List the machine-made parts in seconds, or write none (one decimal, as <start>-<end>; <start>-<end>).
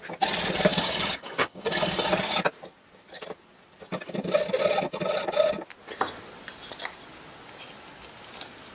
0.7-2.1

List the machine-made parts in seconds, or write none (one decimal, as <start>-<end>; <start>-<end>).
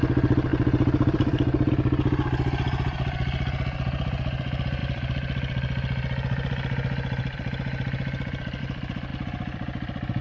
0.5-1.7; 9.1-10.2